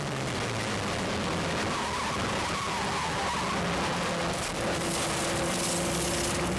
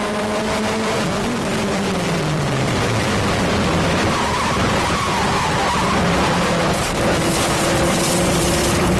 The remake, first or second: second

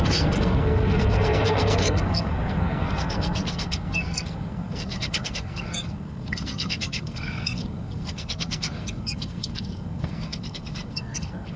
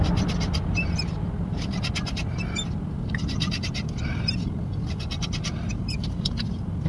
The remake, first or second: first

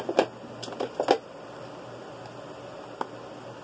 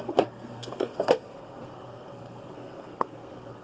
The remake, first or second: second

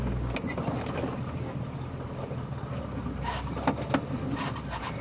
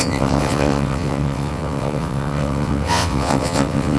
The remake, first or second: second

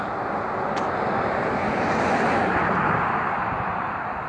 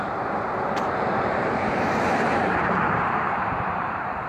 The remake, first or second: second